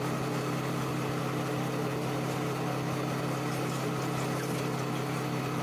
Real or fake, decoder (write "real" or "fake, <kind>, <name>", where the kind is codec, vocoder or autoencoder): real